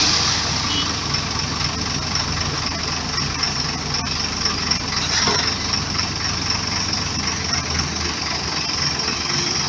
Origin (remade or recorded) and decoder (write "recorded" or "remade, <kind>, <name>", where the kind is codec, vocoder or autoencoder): recorded